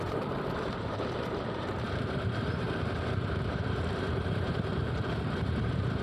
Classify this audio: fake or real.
fake